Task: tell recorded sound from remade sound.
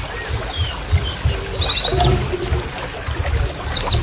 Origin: recorded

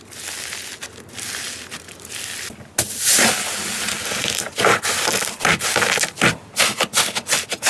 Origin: recorded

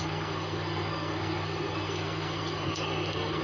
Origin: remade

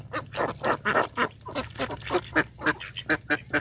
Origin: recorded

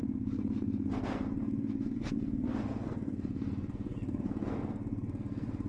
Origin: remade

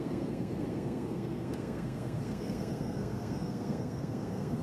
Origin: remade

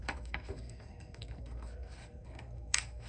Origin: remade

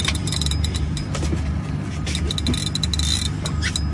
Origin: recorded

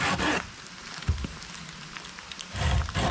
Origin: recorded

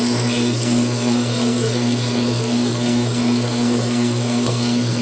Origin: remade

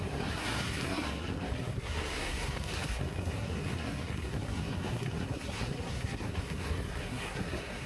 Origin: remade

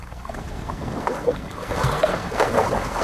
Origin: remade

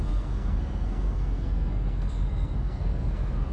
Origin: remade